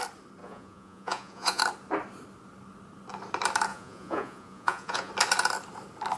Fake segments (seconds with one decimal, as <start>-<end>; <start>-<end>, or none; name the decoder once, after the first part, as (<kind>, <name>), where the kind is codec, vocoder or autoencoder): 0.4-1.6 (vocoder, Vocos); 3.7-5.1